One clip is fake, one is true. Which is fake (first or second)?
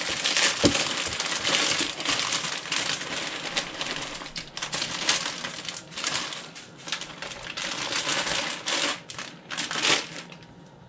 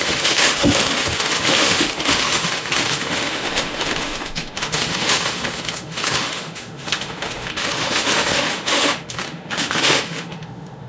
second